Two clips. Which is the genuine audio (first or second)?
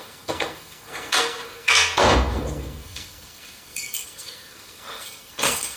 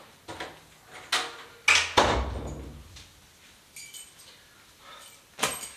second